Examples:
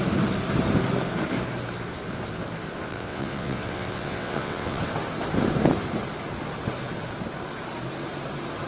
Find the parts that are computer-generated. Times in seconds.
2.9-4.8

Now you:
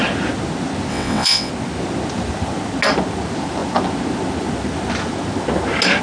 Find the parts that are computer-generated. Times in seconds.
0.9-1.5

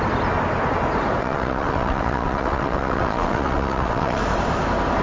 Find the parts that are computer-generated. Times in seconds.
1.2-4.2

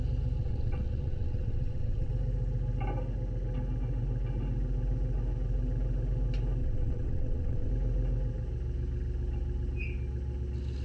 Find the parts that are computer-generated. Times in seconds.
0.4-2.1; 6.6-7.7